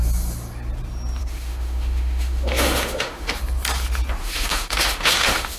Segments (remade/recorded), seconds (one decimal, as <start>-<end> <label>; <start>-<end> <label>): 0.0-1.2 recorded; 1.2-3.3 remade; 3.3-4.2 recorded; 4.2-5.6 remade